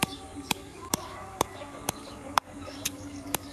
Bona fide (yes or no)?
no